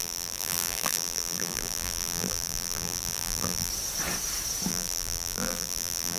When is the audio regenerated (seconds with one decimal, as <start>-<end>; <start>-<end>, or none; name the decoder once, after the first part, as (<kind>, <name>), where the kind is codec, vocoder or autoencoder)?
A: 0.0-3.7 (vocoder, BigVGAN v2); 4.7-6.2